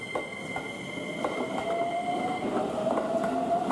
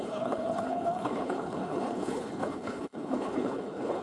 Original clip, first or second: first